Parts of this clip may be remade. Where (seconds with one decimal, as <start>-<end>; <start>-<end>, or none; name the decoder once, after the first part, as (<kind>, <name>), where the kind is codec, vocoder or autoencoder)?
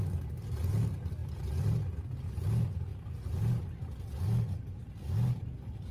none